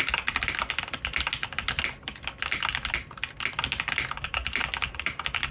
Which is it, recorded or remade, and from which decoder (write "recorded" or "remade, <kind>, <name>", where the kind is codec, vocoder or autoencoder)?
recorded